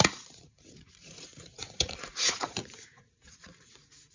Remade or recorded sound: remade